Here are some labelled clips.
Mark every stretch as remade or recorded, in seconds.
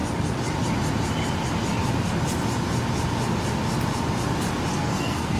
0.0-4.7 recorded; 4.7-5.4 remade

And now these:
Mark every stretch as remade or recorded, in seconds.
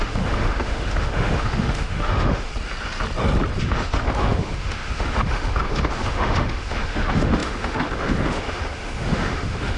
0.0-2.5 remade; 2.5-3.6 recorded; 3.6-9.8 remade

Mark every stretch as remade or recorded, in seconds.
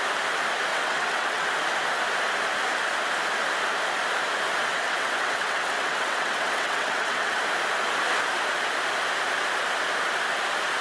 0.0-0.7 recorded; 0.7-1.5 remade; 1.5-4.7 recorded; 4.7-7.4 remade; 7.4-10.8 recorded